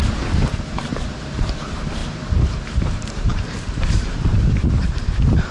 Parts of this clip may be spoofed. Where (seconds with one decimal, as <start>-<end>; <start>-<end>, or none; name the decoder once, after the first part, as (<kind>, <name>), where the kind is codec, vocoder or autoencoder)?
0.0-5.5 (vocoder, BigVGAN v2)